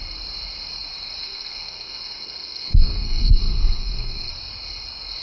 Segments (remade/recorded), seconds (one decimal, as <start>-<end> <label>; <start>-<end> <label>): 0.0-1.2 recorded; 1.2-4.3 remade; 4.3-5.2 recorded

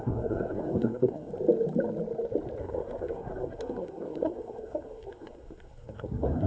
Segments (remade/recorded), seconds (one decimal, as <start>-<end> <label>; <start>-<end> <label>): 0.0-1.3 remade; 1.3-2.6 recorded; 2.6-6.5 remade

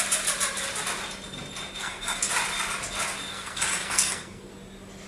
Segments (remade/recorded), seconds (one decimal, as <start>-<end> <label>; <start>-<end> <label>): 0.0-1.8 recorded; 1.8-2.3 remade; 2.3-3.3 recorded; 3.3-4.5 remade; 4.5-5.1 recorded

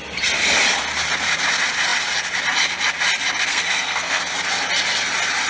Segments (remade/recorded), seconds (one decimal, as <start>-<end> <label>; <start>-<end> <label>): 0.0-3.5 recorded; 3.5-4.2 remade; 4.2-5.5 recorded

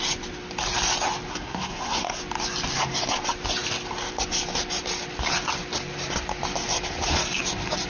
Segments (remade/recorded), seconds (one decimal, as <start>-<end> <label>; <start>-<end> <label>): 0.0-1.3 recorded; 1.3-2.2 remade; 2.2-7.9 recorded